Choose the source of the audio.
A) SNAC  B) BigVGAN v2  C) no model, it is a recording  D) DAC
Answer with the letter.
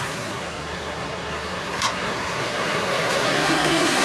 A